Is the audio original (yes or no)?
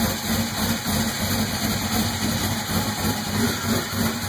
yes